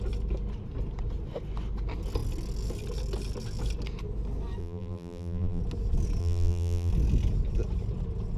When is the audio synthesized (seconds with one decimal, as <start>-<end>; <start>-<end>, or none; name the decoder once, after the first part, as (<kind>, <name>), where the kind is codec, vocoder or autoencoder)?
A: 4.6-5.6 (vocoder, BigVGAN v2); 6.2-6.9